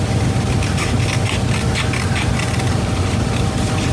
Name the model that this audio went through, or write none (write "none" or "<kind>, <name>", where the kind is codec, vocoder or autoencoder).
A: none